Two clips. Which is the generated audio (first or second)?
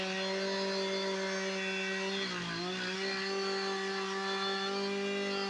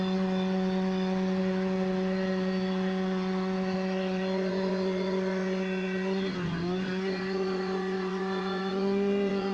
second